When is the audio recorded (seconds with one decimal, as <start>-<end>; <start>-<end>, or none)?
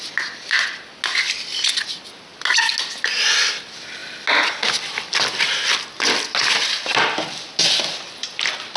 0.0-8.8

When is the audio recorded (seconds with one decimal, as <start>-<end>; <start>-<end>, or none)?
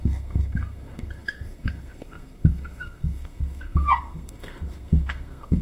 none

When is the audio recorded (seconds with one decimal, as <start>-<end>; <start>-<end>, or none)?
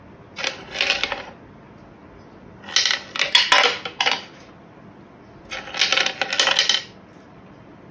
0.0-7.9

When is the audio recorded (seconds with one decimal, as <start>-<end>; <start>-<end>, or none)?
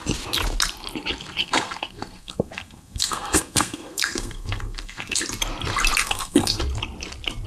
0.0-1.4; 5.2-6.0; 6.6-7.5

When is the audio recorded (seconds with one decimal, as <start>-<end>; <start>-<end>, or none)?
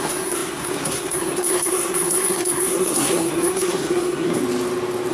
4.4-5.1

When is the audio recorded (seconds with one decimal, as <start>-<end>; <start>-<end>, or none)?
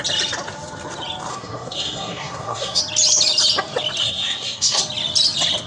0.0-1.3; 2.8-4.0; 4.8-5.7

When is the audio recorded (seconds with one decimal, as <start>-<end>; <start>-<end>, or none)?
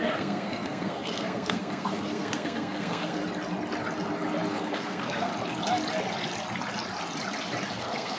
3.2-4.5; 5.3-7.7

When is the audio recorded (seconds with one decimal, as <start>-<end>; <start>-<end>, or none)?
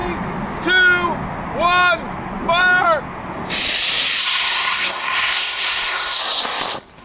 0.0-4.2; 6.2-7.0